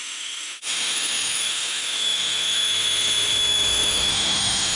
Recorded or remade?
remade